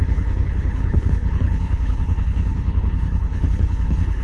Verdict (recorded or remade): remade